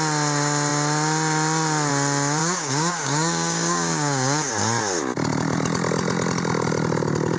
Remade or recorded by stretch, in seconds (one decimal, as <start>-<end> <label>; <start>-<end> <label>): 0.0-2.4 recorded; 2.4-4.5 remade; 4.5-7.4 recorded

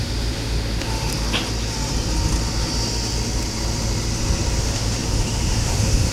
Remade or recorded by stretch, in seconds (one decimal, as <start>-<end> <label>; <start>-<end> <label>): 0.0-1.1 remade; 1.1-4.6 recorded; 4.6-6.1 remade